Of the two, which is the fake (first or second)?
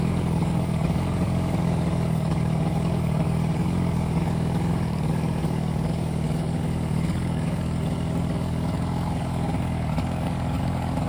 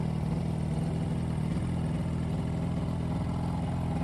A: first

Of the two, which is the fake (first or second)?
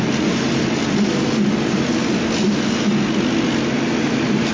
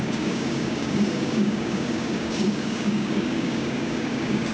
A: second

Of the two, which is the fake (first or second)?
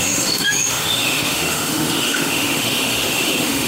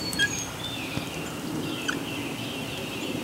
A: first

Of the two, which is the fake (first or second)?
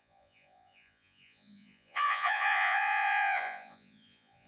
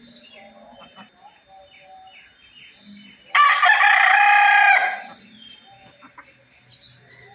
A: first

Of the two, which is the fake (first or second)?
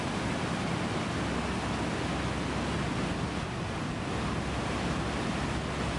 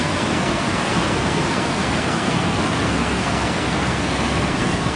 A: second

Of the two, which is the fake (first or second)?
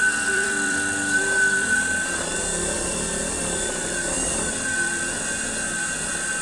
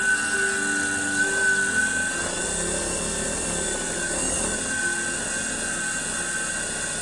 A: first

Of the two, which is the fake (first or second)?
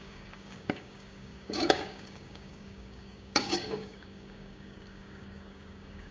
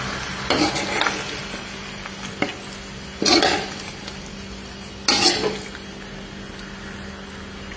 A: first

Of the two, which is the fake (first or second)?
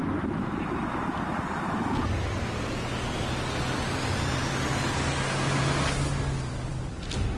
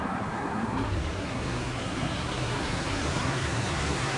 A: second